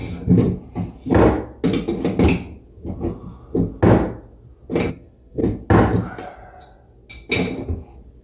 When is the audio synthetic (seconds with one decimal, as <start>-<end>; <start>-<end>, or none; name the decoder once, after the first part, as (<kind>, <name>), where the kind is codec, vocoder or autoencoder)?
4.9-5.4 (codec, SNAC)